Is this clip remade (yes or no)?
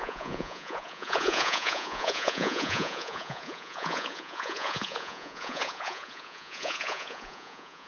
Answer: yes